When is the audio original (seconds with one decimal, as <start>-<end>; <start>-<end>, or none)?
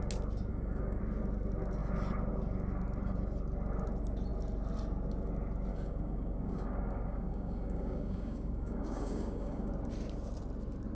0.0-0.5; 1.0-5.7; 9.7-10.9